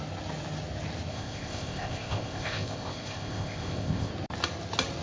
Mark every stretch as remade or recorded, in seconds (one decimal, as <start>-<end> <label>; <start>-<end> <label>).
0.0-1.1 recorded; 1.1-4.1 remade; 4.1-5.0 recorded